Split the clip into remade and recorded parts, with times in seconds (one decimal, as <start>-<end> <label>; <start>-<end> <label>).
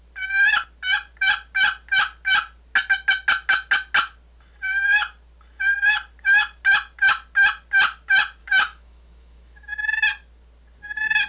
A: 0.0-8.4 recorded; 8.4-9.7 remade; 9.7-11.3 recorded